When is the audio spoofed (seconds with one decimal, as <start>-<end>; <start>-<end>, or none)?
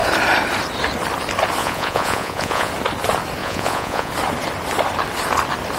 1.6-2.7; 3.4-4.1